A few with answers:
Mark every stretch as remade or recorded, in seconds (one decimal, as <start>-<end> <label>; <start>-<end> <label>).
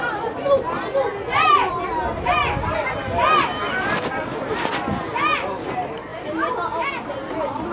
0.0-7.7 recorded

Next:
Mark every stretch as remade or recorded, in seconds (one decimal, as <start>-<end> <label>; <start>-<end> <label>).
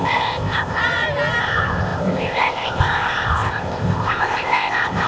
0.0-0.8 remade; 0.8-1.4 recorded; 1.4-5.1 remade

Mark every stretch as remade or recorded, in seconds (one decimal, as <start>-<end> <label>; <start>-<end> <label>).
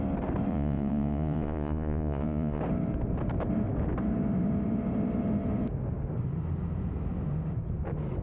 0.0-0.5 recorded; 0.5-2.6 remade; 2.6-8.2 recorded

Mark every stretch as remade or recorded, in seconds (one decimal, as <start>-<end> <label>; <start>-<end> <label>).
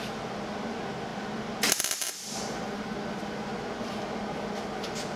0.0-5.2 recorded